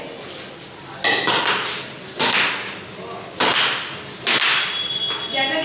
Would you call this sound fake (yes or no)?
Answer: no